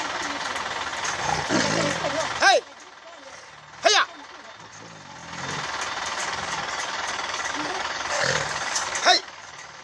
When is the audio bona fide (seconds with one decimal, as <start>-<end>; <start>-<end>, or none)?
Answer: 0.0-6.2